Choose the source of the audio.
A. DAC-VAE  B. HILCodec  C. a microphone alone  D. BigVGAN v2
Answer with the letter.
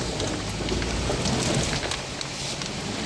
C